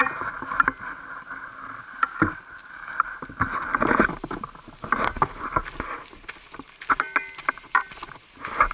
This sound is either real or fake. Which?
real